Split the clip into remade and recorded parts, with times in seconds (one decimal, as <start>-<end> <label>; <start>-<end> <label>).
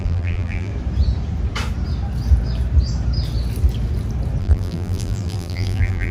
0.0-0.7 remade; 0.7-4.4 recorded; 4.4-6.1 remade